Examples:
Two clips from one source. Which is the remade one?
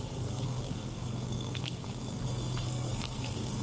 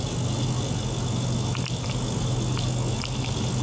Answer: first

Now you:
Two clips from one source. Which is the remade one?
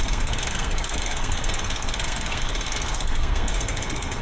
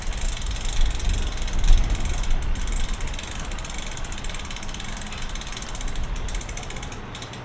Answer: first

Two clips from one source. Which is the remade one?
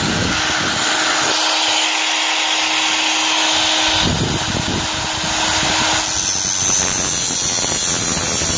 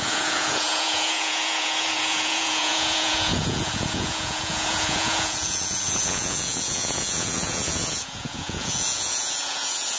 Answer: second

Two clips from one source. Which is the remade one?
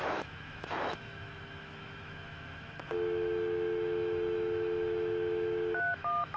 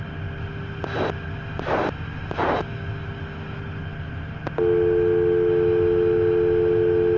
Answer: first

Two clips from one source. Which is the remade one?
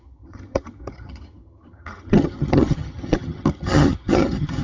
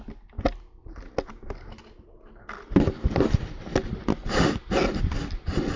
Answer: first